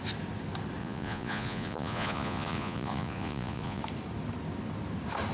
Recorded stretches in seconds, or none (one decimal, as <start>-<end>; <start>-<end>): 0.0-0.8; 3.8-5.3